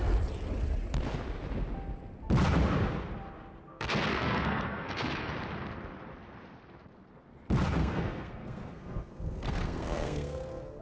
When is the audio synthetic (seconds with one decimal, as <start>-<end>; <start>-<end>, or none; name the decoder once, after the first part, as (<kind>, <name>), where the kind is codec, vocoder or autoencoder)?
3.7-5.3 (codec, SNAC); 7.8-10.8